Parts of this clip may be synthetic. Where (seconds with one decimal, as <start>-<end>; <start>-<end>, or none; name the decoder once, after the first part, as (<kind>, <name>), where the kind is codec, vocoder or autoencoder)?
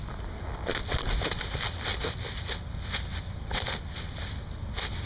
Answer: none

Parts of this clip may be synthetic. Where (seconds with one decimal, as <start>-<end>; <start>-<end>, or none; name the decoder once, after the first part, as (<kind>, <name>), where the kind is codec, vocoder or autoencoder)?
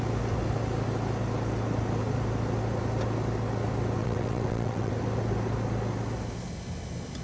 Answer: 4.0-4.9 (vocoder, WaveNeXt)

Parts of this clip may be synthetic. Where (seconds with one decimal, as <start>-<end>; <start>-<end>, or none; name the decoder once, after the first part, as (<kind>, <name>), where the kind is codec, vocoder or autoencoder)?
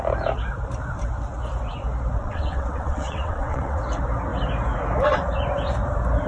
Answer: 2.2-3.8 (vocoder, WaveNeXt)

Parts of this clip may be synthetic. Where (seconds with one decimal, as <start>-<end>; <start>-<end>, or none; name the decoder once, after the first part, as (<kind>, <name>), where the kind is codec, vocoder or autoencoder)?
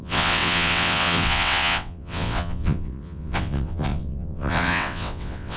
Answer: 0.0-5.6 (vocoder, WaveNeXt)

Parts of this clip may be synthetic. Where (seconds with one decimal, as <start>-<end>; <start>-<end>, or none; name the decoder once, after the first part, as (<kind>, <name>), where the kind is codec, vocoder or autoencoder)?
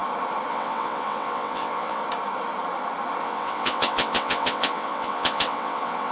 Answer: 0.5-2.0 (vocoder, WaveNeXt); 3.2-6.1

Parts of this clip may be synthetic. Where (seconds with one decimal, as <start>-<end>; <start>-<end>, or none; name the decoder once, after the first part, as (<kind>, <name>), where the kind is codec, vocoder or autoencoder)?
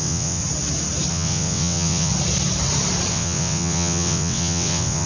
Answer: 0.0-0.4 (vocoder, WaveNeXt); 1.1-2.1; 3.1-5.1